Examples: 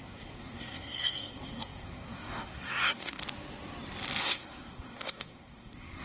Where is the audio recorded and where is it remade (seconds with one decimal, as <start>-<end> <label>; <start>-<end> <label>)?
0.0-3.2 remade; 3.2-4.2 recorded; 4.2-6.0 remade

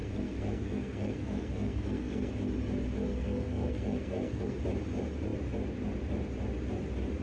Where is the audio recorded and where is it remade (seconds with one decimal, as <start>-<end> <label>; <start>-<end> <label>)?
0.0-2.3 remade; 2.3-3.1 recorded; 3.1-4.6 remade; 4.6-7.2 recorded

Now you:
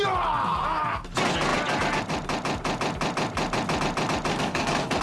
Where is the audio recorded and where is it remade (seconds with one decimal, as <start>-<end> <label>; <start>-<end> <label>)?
0.0-4.3 recorded; 4.3-5.0 remade

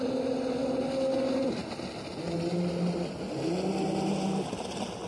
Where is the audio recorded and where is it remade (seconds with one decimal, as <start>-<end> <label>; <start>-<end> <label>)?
0.0-5.1 recorded

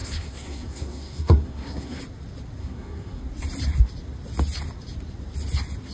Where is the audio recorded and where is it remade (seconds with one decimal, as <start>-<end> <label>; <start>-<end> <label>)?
0.0-2.0 remade; 2.0-2.6 recorded; 2.6-3.2 remade; 3.2-5.9 recorded

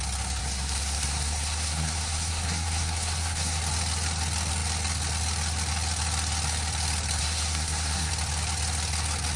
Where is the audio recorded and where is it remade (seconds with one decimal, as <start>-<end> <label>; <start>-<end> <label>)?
0.0-0.4 recorded; 0.4-3.6 remade; 3.6-7.2 recorded; 7.2-8.1 remade; 8.1-9.4 recorded

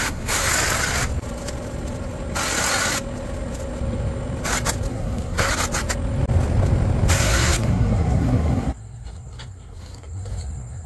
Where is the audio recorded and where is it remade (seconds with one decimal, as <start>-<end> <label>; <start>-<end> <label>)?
0.0-0.5 remade; 0.5-4.9 recorded; 4.9-5.5 remade; 5.5-7.1 recorded; 7.1-10.9 remade